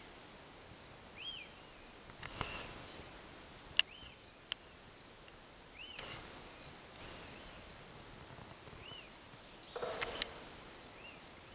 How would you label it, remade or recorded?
recorded